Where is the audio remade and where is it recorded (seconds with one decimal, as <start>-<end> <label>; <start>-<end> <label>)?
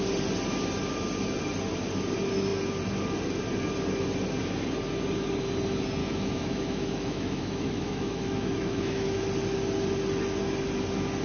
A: 0.0-6.0 recorded; 6.0-9.2 remade; 9.2-11.2 recorded